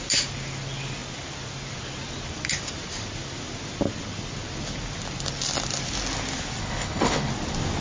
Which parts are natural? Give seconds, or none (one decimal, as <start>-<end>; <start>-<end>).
0.0-6.6; 7.3-7.8